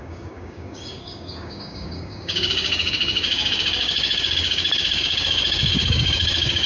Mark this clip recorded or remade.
remade